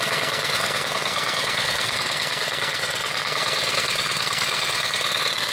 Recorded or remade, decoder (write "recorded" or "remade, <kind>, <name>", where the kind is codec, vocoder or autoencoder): remade, codec, SNAC